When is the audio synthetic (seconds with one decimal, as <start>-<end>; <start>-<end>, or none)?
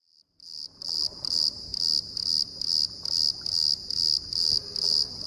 0.0-1.7; 4.3-5.3